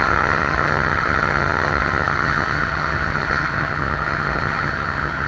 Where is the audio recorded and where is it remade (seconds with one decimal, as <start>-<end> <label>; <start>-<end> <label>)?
0.0-5.3 remade